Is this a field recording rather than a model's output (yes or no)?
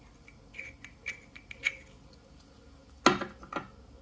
yes